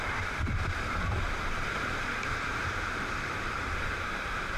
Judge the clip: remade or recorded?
remade